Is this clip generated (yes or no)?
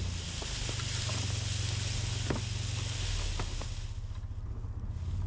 no